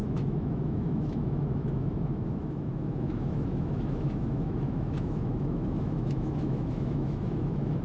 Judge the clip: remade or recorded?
remade